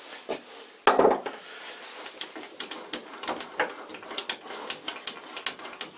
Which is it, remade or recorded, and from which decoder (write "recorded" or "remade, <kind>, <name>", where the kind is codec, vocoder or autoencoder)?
recorded